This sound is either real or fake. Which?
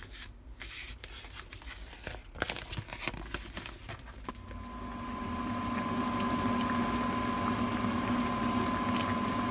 real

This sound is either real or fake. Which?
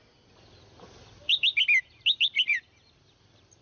real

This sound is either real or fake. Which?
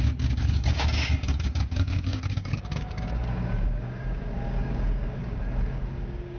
fake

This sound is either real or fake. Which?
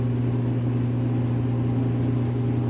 real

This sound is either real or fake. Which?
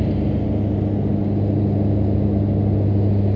real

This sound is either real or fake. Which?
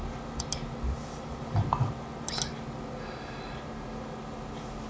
real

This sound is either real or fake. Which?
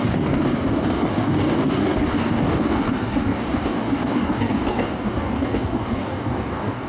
fake